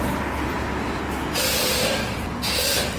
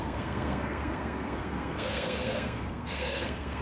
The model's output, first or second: second